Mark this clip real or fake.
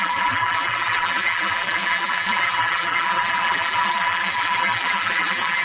fake